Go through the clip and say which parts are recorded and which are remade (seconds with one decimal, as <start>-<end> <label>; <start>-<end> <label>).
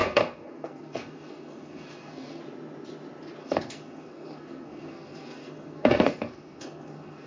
0.0-2.4 remade; 2.4-3.4 recorded; 3.4-7.3 remade